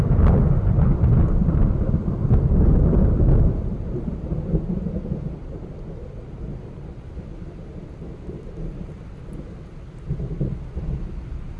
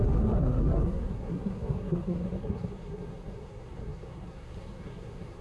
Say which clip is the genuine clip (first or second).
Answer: first